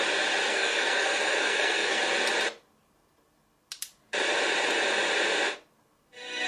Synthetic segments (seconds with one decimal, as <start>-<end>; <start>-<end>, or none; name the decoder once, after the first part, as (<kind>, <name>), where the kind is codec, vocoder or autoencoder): 0.4-2.0 (codec, SNAC)